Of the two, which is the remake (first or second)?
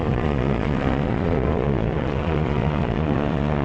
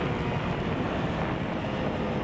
first